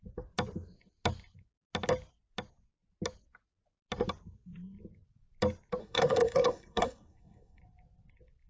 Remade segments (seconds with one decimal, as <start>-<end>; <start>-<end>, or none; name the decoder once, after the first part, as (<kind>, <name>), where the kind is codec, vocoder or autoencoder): 5.8-7.6 (codec, SNAC)